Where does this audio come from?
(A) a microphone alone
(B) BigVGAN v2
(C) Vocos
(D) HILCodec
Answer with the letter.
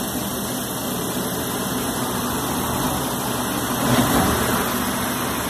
A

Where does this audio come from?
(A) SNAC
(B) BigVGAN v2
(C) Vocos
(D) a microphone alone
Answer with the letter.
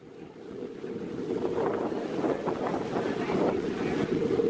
D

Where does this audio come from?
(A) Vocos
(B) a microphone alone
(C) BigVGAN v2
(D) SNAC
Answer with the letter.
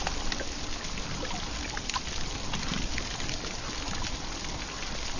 B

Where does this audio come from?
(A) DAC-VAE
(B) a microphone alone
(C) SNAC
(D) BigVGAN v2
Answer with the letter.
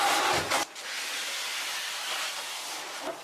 B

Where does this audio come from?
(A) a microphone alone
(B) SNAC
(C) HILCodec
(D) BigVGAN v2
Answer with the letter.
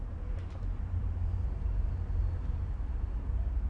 D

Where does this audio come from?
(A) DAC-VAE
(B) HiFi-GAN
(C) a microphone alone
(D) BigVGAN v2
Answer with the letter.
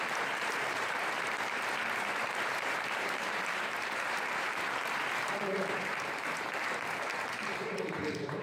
D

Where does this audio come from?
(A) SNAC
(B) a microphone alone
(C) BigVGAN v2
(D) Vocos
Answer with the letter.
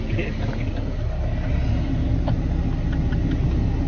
B